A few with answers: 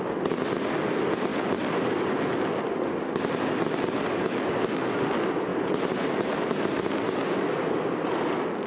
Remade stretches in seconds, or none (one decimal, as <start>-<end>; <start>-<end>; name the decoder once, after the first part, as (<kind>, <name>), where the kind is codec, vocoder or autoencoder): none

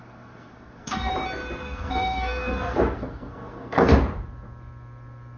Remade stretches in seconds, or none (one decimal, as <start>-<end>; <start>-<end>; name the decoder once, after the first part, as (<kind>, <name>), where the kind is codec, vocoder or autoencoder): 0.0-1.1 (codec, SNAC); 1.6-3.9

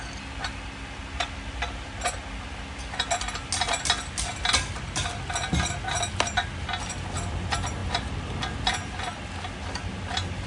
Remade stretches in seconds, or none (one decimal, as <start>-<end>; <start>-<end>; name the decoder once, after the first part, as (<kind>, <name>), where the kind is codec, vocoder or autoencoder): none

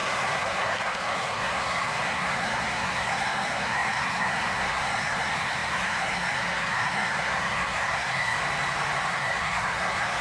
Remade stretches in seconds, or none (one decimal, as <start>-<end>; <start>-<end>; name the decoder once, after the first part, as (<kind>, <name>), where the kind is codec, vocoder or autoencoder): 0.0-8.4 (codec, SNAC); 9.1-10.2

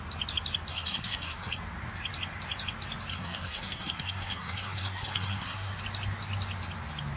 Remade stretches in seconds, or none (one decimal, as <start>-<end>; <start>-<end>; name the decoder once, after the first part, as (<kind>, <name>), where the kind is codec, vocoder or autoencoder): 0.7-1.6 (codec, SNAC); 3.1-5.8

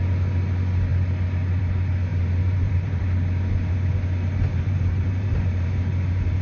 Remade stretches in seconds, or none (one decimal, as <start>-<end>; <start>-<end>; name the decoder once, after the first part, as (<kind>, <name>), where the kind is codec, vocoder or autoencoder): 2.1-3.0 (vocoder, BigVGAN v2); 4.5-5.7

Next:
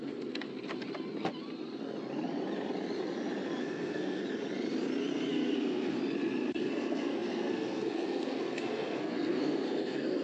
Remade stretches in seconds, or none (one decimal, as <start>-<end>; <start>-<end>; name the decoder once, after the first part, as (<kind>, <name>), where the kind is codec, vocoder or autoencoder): 0.0-0.5 (codec, SNAC); 3.6-4.2; 5.3-6.0; 6.5-10.2